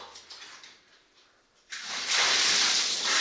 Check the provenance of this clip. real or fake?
real